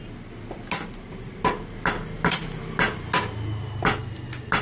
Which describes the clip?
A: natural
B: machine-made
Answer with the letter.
A